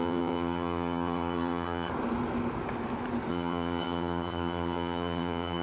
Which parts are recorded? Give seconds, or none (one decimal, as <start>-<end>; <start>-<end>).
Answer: 1.9-3.3